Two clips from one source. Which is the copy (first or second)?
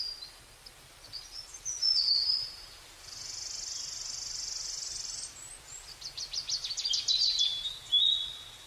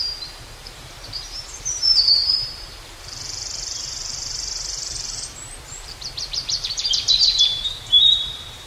second